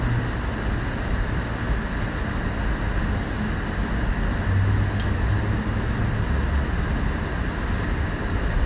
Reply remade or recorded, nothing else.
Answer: recorded